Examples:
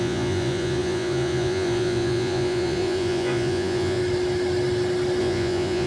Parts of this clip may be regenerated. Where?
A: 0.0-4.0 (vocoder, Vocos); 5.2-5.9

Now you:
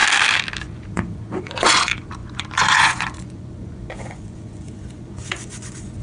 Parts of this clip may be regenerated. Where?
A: 0.6-6.0 (vocoder, Vocos)

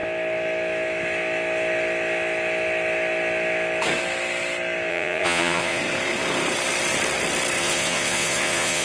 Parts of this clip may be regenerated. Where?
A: 4.9-5.8 (vocoder, Vocos); 7.6-8.8

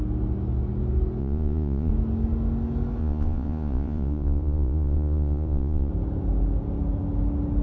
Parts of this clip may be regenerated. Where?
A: 1.2-1.9 (vocoder, Vocos); 3.0-5.9

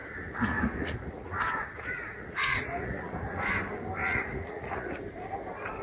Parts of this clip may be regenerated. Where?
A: 0.0-3.5 (vocoder, Vocos); 4.0-5.0

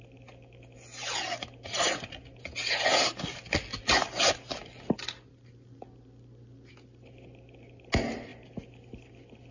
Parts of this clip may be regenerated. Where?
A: none